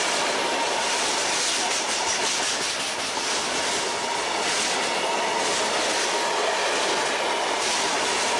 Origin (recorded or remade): recorded